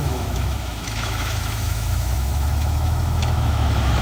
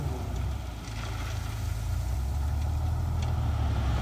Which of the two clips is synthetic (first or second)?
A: first